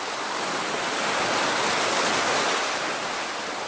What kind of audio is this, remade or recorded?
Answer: recorded